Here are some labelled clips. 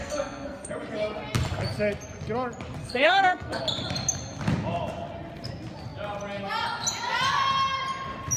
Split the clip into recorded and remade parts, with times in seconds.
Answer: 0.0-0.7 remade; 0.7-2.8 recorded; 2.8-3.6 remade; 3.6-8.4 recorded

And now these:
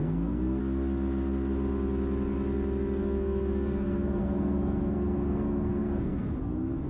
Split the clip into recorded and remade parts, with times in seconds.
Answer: 0.0-0.6 remade; 0.6-3.0 recorded; 3.0-6.9 remade

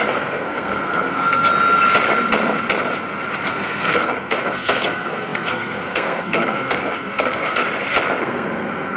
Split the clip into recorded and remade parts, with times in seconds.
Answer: 0.0-1.5 remade; 1.5-3.5 recorded; 3.5-7.6 remade; 7.6-8.2 recorded; 8.2-9.0 remade

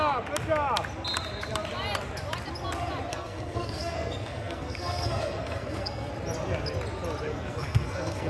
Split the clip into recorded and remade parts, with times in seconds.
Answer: 0.0-3.1 recorded; 3.1-6.1 remade; 6.1-7.3 recorded; 7.3-8.3 remade

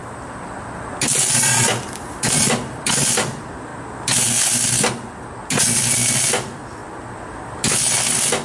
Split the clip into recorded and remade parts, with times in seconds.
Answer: 0.0-8.4 recorded

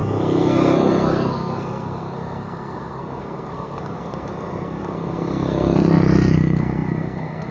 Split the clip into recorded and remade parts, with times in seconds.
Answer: 0.0-7.5 remade

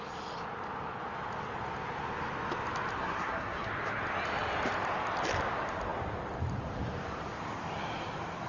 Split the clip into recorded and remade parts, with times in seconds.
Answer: 0.0-3.0 recorded; 3.0-3.7 remade; 3.7-8.5 recorded

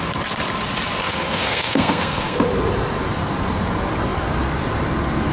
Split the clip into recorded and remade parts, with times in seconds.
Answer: 0.0-1.0 recorded; 1.0-2.4 remade; 2.4-5.3 recorded